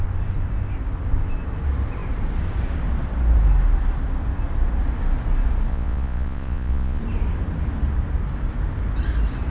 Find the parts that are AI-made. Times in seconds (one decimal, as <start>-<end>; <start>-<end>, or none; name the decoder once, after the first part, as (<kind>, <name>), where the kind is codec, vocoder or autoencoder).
5.7-7.0 (vocoder, Vocos)